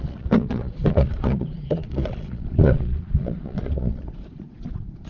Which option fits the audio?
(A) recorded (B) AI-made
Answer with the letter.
B